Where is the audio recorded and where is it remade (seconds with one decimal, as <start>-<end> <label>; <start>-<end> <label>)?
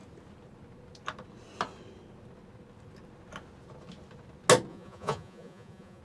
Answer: 0.0-4.7 recorded; 4.7-6.0 remade